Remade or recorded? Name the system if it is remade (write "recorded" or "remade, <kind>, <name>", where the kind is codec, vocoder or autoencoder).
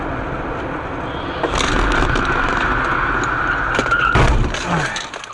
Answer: recorded